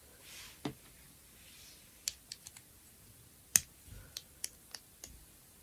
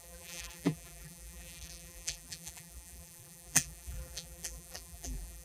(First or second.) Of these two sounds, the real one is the first